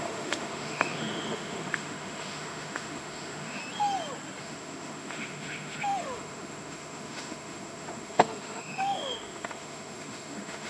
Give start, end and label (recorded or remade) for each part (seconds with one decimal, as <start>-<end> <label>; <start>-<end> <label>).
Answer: 0.0-3.6 remade; 3.6-4.4 recorded; 4.4-10.7 remade

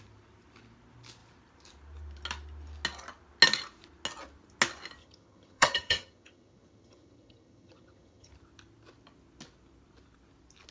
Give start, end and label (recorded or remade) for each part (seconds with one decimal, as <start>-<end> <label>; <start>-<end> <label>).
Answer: 0.0-5.0 recorded; 5.0-8.3 remade; 8.3-10.7 recorded

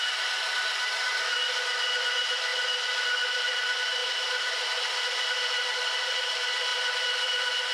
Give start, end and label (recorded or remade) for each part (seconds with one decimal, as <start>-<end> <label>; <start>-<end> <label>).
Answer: 0.0-4.0 recorded; 4.0-5.0 remade; 5.0-7.7 recorded

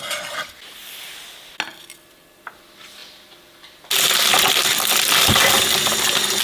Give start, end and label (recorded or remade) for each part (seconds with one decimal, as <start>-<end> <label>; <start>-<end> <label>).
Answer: 0.0-6.4 recorded